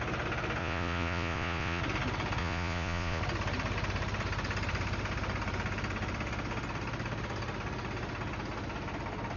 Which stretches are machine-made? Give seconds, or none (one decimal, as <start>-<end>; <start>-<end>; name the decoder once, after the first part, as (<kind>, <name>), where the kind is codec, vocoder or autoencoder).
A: 0.6-1.8 (vocoder, Vocos); 2.4-3.2